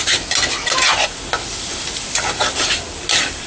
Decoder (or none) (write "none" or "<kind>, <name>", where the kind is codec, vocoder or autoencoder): none